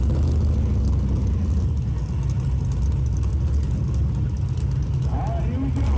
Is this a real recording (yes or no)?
yes